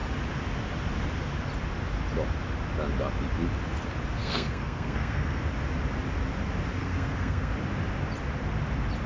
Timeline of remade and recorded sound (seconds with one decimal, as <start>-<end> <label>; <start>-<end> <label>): 0.0-4.2 recorded; 4.2-5.4 remade; 5.4-6.8 recorded; 6.8-7.5 remade; 7.5-9.1 recorded